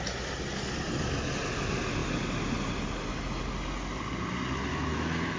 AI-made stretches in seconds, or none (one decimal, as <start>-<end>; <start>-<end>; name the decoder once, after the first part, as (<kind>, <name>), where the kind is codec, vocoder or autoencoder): 4.7-5.4 (autoencoder, DAC-VAE)